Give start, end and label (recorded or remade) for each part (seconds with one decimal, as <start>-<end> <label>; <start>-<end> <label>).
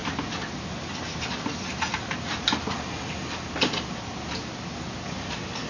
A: 0.0-5.7 recorded